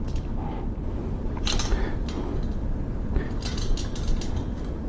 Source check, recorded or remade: recorded